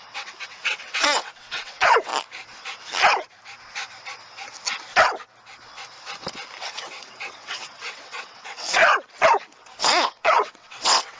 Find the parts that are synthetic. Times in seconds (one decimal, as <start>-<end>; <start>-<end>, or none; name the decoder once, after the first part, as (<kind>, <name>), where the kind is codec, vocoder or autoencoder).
0.0-2.1 (vocoder, WaveNeXt); 6.6-8.8; 9.8-11.2